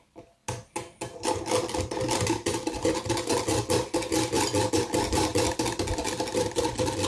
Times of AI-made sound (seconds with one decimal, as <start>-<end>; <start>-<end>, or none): 0.0-0.4; 4.7-5.3; 6.3-7.1